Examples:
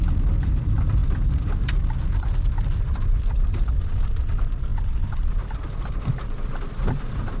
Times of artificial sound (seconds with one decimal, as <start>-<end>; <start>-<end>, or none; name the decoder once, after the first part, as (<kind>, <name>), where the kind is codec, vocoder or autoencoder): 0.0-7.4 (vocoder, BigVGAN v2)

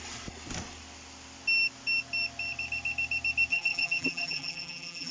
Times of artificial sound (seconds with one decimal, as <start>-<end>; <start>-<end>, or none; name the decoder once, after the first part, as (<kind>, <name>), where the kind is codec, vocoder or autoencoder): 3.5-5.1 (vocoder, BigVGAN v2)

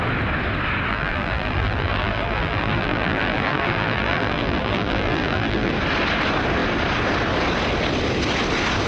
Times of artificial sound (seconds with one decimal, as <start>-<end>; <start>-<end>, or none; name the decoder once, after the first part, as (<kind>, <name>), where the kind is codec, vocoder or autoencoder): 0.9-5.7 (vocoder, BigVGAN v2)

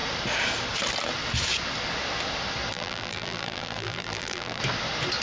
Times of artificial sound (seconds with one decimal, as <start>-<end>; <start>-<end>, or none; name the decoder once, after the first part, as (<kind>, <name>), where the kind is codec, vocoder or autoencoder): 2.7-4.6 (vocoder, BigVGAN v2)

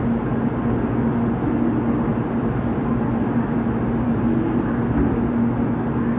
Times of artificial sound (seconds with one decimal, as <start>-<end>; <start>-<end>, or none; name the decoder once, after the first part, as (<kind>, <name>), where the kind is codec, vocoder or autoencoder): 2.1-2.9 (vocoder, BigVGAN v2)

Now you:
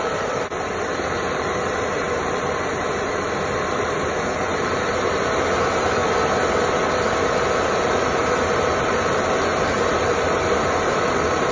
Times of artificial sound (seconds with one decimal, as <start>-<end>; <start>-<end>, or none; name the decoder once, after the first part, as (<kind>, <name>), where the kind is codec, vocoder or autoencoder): 0.0-6.0 (vocoder, BigVGAN v2); 7.6-11.5